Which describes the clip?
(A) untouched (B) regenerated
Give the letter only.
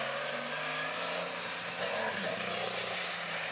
A